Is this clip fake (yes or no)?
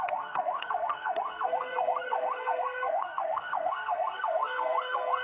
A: yes